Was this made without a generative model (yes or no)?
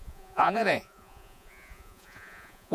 no